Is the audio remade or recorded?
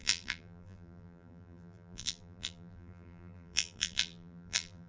remade